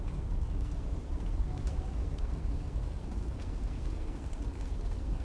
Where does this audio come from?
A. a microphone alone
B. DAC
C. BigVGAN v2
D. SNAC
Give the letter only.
D